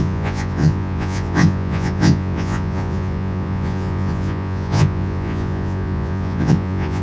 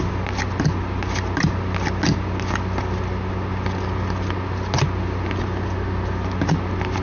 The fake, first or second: first